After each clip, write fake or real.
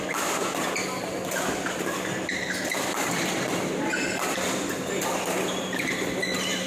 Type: real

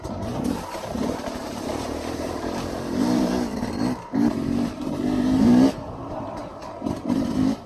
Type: fake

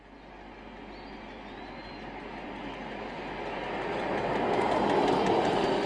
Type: real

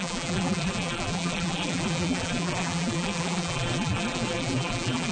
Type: fake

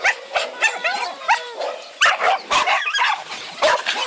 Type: fake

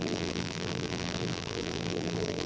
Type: fake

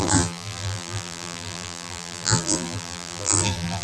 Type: fake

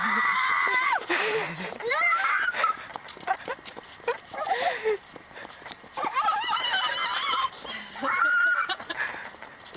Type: fake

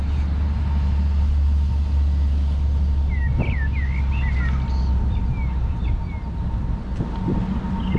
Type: real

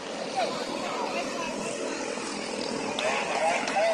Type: real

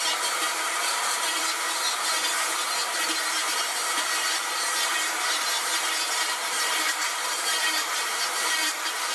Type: fake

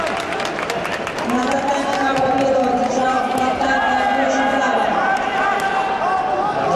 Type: real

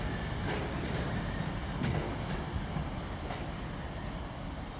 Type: real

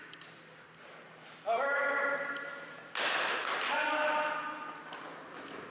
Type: real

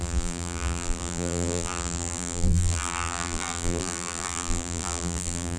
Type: fake